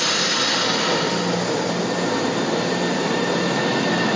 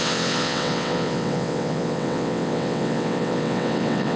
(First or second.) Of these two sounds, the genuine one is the first